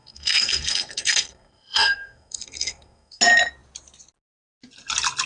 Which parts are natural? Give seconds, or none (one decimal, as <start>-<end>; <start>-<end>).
3.2-5.3